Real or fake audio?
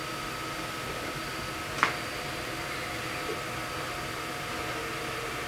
real